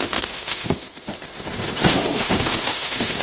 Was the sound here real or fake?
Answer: fake